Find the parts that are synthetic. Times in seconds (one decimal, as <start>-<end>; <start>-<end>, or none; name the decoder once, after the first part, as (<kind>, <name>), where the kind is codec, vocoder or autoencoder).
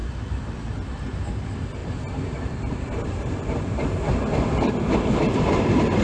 1.8-4.0 (vocoder, BigVGAN v2)